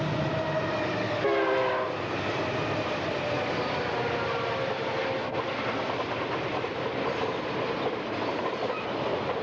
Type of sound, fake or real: real